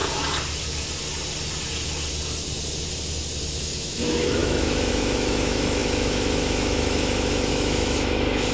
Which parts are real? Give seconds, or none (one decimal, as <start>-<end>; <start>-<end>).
0.0-3.6